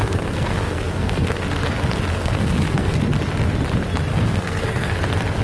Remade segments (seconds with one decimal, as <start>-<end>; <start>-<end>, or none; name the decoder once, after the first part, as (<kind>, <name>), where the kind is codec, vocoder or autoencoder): 0.0-1.4 (codec, SNAC); 2.1-3.0; 4.1-5.0